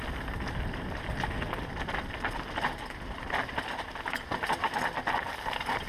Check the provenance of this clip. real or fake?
real